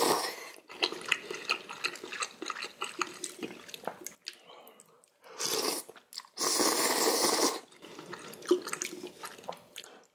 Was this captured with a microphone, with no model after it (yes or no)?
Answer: yes